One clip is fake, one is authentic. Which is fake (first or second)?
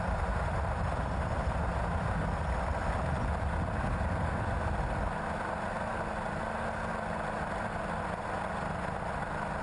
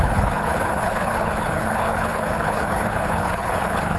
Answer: second